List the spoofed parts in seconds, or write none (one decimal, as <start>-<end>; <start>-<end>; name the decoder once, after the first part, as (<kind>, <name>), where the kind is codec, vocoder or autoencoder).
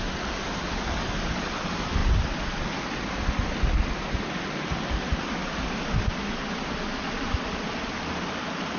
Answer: none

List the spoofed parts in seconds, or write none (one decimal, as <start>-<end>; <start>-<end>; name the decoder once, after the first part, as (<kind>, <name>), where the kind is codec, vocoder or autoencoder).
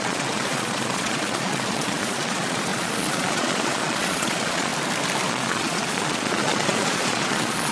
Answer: 0.0-4.7 (vocoder, Vocos); 5.3-7.7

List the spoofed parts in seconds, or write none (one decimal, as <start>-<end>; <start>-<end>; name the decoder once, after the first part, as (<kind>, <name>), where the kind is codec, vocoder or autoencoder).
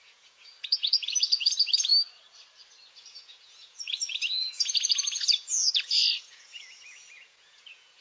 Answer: 0.0-1.9 (vocoder, Vocos); 2.9-8.0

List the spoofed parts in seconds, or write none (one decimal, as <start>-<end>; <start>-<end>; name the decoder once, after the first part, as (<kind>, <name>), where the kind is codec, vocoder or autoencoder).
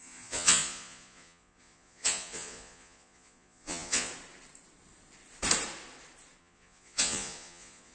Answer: 0.0-4.1 (vocoder, Vocos); 6.4-7.9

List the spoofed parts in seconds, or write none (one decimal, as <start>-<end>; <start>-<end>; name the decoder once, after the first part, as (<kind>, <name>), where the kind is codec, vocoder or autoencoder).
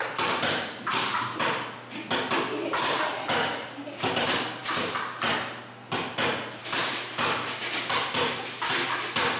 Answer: none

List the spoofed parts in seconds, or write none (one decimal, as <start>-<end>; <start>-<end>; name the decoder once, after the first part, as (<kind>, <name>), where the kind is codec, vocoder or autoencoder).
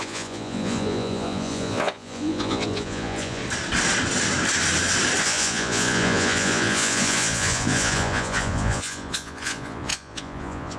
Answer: 0.0-3.4 (vocoder, Vocos); 5.2-10.8